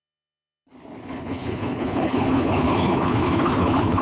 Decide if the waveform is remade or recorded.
remade